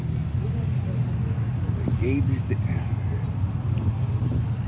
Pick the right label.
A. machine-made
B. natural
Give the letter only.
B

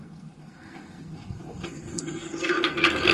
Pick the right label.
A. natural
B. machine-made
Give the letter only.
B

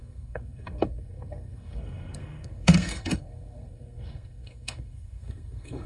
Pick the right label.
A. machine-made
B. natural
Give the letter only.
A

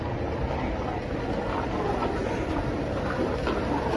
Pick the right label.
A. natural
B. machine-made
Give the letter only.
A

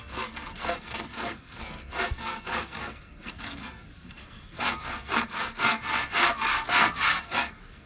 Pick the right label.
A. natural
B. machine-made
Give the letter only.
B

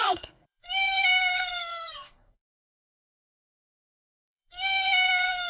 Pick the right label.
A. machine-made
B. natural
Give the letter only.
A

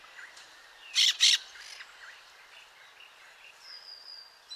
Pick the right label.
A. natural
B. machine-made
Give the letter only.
A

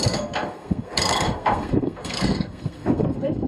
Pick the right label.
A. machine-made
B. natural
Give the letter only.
A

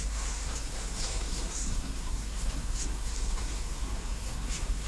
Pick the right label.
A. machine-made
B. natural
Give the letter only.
A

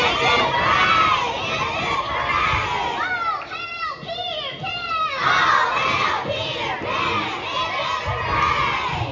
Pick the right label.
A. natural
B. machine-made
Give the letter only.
A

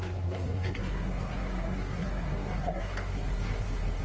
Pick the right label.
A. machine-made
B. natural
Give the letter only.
A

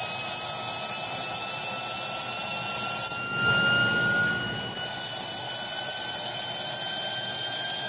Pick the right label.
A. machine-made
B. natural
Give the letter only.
B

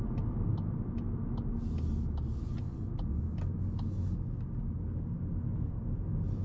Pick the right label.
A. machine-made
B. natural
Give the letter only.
B